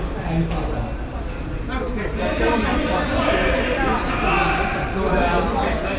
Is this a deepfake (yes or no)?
no